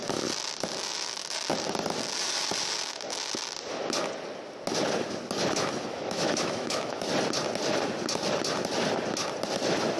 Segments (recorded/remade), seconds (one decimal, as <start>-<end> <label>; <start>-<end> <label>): 0.0-5.9 recorded; 5.9-7.1 remade; 7.1-10.0 recorded